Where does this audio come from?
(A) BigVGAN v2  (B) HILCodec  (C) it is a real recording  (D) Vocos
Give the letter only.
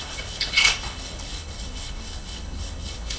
B